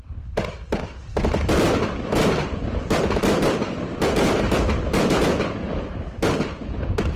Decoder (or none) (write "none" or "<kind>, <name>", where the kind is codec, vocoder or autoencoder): none